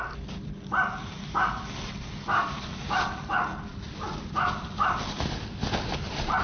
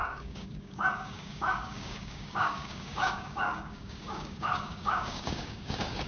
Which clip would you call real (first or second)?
first